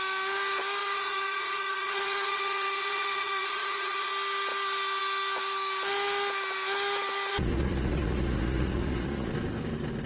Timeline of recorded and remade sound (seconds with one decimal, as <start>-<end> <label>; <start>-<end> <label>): 0.0-0.8 recorded; 0.8-4.1 remade; 4.1-7.3 recorded; 7.3-9.3 remade; 9.3-10.1 recorded